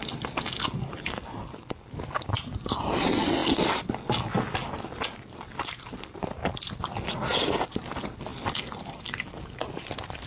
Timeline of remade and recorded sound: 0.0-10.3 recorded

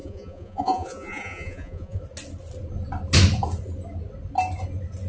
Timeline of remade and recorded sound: 0.0-2.0 remade; 2.0-5.1 recorded

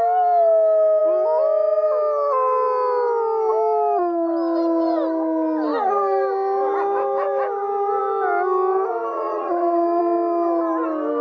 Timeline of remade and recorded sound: 0.0-9.1 recorded; 9.1-10.0 remade; 10.0-11.2 recorded

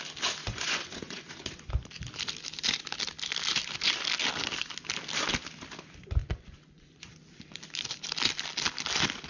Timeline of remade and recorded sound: 0.0-0.4 recorded; 0.4-1.7 remade; 1.7-6.2 recorded; 6.2-7.1 remade; 7.1-9.3 recorded

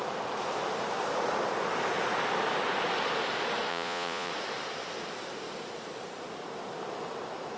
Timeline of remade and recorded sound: 0.0-3.7 recorded; 3.7-4.3 remade; 4.3-7.6 recorded